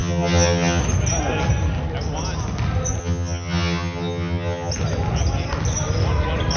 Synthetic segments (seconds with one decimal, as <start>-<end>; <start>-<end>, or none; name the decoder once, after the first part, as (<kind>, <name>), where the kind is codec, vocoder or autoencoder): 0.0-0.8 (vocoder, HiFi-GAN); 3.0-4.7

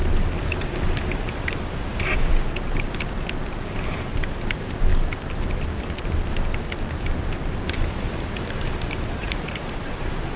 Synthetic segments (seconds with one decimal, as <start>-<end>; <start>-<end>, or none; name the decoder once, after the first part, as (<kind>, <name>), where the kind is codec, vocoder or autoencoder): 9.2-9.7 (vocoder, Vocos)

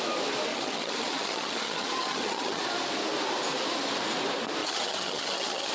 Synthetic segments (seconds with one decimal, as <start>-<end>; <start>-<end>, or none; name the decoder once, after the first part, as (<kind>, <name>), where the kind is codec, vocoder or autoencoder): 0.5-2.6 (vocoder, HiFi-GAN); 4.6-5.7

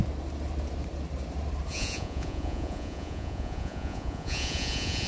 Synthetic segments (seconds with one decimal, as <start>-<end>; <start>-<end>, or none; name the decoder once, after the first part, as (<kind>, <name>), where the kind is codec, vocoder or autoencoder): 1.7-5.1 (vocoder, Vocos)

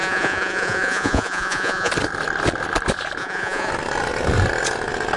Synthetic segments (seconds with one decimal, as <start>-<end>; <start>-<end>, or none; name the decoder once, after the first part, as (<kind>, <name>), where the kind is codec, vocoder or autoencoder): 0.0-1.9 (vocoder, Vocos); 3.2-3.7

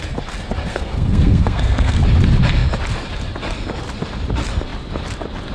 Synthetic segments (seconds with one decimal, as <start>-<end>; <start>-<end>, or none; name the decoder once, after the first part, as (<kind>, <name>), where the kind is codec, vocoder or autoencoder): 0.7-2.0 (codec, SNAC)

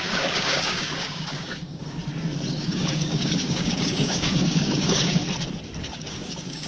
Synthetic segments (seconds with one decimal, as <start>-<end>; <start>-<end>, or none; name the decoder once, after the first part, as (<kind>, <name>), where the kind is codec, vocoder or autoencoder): 0.0-2.0 (codec, DAC); 2.5-5.2; 5.8-6.7